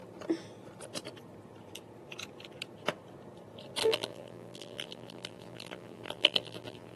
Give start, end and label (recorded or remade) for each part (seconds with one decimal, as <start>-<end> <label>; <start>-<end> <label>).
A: 0.0-3.8 recorded; 3.8-7.0 remade